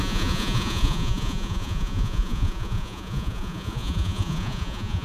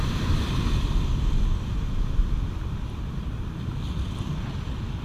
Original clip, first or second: second